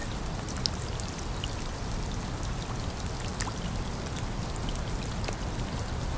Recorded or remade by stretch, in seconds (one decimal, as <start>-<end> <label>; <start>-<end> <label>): 0.0-2.1 remade; 2.1-3.3 recorded; 3.3-4.1 remade; 4.1-6.2 recorded